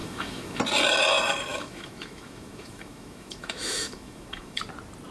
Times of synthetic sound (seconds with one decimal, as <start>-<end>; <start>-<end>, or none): 0.0-0.6; 1.5-4.6